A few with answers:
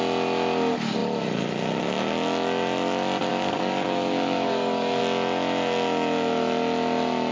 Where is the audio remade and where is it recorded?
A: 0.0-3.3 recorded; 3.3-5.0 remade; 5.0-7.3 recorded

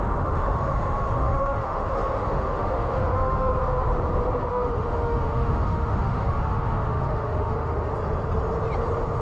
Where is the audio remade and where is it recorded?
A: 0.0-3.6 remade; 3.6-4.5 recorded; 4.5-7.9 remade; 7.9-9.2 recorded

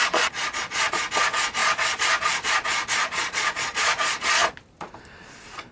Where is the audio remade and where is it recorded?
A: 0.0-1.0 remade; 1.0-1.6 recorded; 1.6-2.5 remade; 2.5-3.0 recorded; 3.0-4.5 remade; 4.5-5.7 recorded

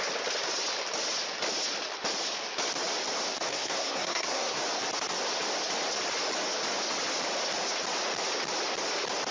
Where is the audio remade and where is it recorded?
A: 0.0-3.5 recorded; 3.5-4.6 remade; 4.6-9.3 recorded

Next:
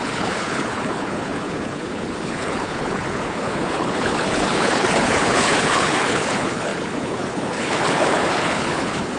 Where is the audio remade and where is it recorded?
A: 0.0-9.2 remade